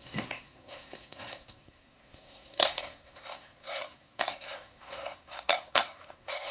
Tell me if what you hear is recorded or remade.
remade